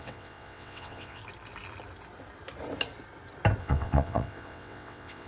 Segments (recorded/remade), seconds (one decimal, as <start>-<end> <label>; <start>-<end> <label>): 0.0-1.2 remade; 1.2-3.6 recorded; 3.6-5.3 remade